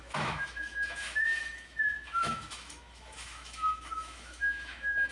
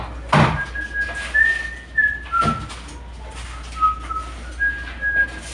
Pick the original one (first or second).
second